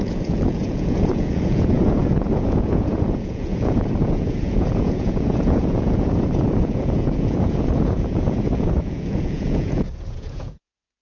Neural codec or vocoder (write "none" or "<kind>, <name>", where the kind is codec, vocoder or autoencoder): vocoder, Vocos